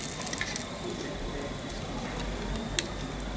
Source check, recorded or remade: recorded